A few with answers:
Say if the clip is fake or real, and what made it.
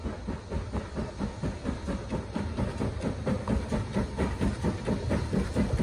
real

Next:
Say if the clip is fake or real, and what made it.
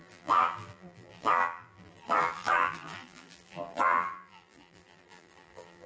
fake, vocoder, BigVGAN v2